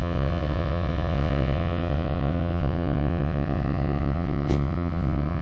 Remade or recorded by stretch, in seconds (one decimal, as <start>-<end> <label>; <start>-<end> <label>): 0.0-5.4 remade